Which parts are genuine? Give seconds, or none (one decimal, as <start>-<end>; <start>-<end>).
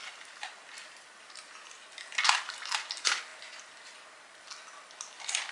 0.0-5.5